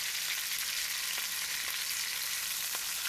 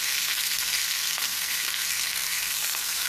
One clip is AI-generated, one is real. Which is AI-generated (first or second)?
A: second